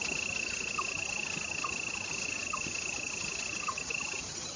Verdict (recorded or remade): recorded